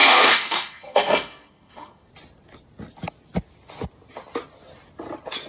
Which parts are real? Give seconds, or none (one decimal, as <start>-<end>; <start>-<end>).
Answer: 2.1-5.5

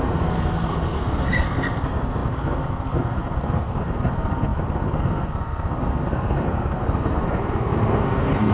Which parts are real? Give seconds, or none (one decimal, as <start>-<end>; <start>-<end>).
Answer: none